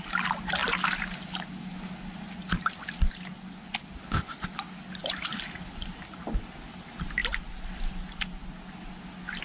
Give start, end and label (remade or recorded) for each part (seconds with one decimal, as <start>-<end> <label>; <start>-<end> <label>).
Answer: 0.0-9.4 recorded